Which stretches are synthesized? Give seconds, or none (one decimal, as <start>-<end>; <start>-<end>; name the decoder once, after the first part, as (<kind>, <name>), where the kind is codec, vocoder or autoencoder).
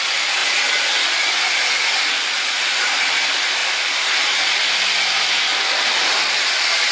0.0-0.4 (vocoder, BigVGAN v2); 2.0-6.9